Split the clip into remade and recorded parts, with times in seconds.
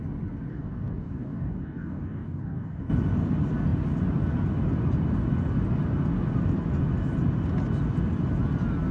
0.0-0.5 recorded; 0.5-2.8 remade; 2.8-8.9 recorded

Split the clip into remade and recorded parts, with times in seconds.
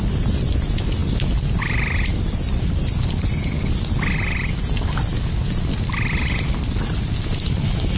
0.0-8.0 recorded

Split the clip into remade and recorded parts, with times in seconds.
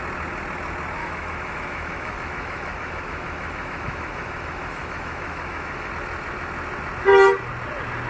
0.0-1.0 recorded; 1.0-5.9 remade; 5.9-8.1 recorded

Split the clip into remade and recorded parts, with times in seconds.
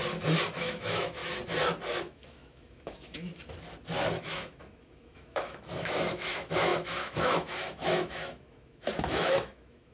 0.0-0.6 recorded; 0.6-1.2 remade; 1.2-2.0 recorded; 2.0-3.3 remade; 3.3-4.1 recorded; 4.1-9.9 remade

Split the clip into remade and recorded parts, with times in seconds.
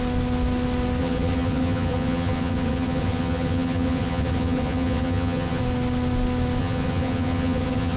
0.0-1.0 recorded; 1.0-5.6 remade; 5.6-6.6 recorded; 6.6-8.0 remade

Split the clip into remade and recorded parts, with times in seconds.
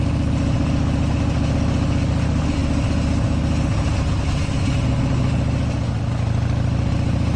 0.0-7.4 recorded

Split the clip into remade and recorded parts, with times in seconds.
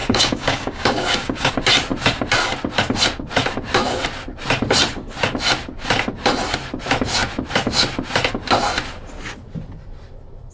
0.0-1.5 remade; 1.5-10.5 recorded